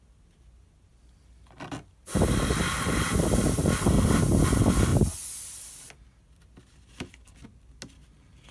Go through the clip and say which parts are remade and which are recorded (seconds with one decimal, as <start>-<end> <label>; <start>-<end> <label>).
0.0-8.5 recorded